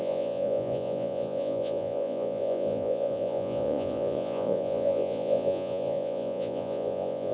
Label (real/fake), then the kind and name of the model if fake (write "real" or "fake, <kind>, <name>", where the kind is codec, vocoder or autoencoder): fake, vocoder, Vocos